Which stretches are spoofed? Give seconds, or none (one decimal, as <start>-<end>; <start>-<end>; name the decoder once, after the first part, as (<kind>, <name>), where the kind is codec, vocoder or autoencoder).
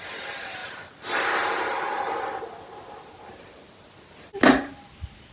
none